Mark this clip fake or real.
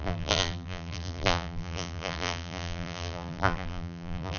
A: fake